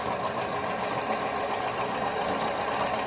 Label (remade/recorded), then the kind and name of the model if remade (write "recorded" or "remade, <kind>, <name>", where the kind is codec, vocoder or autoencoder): recorded